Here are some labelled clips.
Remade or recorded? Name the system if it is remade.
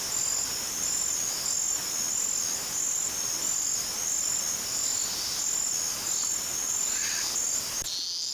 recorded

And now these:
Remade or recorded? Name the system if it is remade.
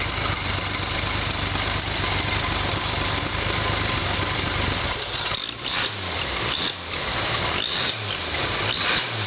remade, vocoder, BigVGAN v2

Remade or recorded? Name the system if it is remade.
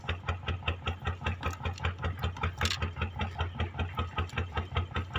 recorded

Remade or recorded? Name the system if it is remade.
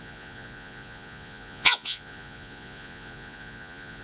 remade, vocoder, Vocos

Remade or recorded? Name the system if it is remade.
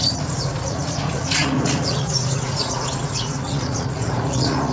remade, vocoder, Vocos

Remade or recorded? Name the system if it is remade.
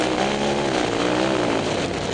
recorded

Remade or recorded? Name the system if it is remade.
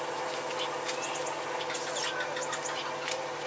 recorded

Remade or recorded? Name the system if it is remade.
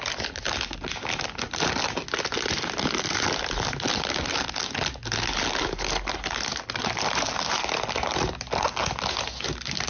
recorded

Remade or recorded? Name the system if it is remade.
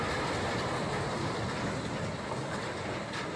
recorded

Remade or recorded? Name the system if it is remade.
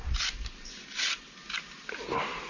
recorded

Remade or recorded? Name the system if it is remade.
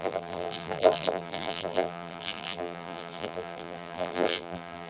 remade, vocoder, BigVGAN v2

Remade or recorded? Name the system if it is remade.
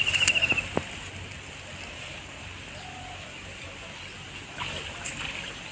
recorded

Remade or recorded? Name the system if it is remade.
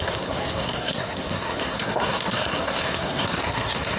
remade, codec, SNAC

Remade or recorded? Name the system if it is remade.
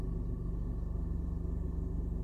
recorded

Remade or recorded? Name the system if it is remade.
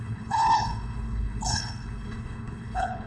remade, codec, HILCodec